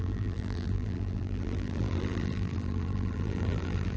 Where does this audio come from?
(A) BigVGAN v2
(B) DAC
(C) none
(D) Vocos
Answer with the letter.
A